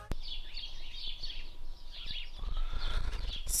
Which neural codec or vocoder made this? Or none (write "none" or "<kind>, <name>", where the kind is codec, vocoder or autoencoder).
none